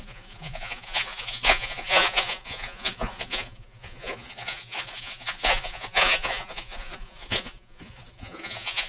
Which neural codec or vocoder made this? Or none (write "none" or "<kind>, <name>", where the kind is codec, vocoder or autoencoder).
vocoder, Vocos